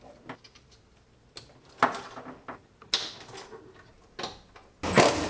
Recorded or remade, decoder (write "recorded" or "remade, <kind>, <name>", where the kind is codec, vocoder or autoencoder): recorded